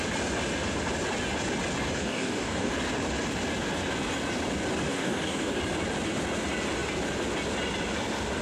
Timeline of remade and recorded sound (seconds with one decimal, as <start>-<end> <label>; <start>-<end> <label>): 0.0-2.0 recorded; 2.0-2.7 remade; 2.7-4.9 recorded; 4.9-5.6 remade; 5.6-8.4 recorded